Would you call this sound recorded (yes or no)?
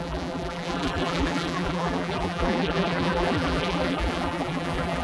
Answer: no